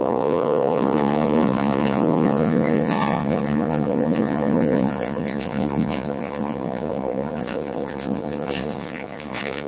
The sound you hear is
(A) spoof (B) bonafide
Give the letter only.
A